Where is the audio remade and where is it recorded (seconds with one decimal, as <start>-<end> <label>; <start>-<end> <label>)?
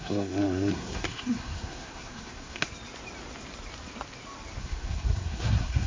0.0-2.6 remade; 2.6-4.6 recorded; 4.6-5.9 remade